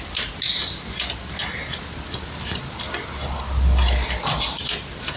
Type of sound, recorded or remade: recorded